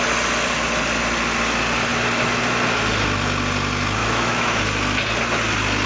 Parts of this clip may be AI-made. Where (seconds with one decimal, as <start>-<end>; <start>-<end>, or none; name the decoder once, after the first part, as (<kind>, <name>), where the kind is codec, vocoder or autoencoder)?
4.0-4.6 (autoencoder, DAC-VAE)